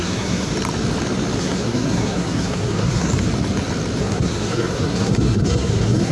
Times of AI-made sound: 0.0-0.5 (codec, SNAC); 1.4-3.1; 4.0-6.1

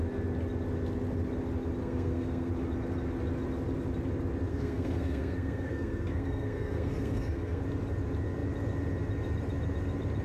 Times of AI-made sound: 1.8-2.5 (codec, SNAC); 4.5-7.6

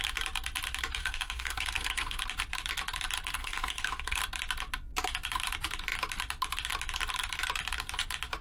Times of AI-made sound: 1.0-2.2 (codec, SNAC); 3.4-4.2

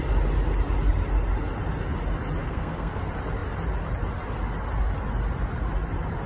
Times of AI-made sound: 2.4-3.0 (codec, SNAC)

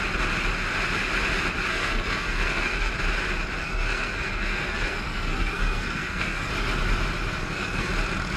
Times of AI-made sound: 1.7-2.9 (codec, SNAC); 3.6-6.5; 7.4-7.9